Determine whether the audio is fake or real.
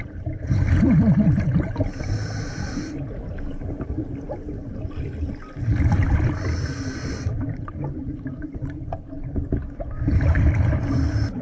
real